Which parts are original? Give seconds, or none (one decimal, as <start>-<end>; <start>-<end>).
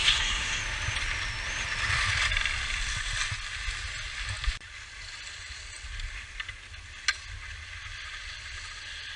0.6-9.2